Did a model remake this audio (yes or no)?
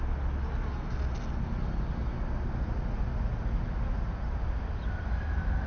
no